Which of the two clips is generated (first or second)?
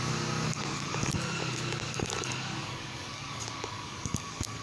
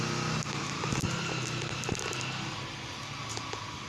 first